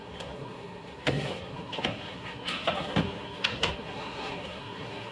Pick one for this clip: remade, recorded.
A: remade